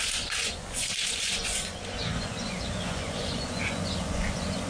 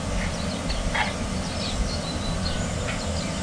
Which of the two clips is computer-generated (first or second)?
first